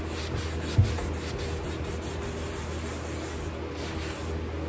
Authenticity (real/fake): real